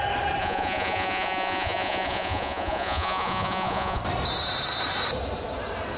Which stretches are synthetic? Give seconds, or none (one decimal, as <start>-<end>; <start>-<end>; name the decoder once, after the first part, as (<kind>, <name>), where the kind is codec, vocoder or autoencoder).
0.4-4.0 (vocoder, Vocos)